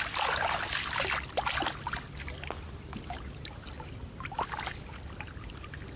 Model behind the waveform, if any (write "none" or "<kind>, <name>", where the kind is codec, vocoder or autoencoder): none